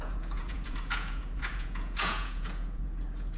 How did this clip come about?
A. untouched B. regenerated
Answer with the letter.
B